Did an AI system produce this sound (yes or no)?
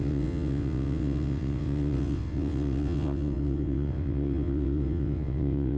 yes